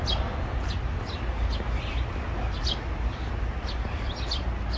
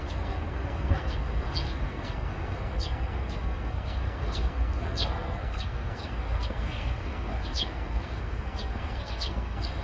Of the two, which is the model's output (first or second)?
second